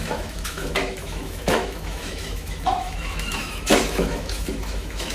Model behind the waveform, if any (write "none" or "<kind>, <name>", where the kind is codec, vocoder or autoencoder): autoencoder, DAC-VAE